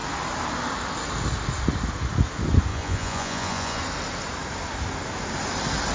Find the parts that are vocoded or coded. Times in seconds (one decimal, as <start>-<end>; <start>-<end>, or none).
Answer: 2.7-3.8

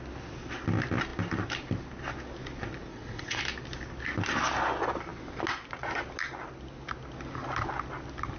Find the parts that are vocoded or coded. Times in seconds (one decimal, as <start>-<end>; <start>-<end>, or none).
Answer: 2.9-3.4